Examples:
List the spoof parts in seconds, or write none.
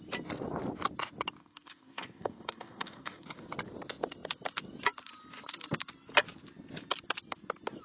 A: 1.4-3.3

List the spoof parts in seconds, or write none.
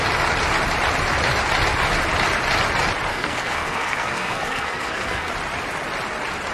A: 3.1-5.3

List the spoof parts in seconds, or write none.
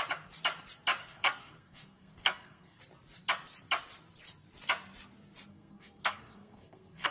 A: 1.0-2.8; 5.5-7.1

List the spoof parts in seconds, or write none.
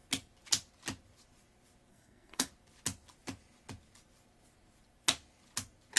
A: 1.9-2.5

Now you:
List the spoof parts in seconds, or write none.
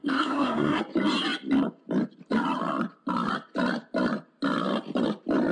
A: 0.0-0.8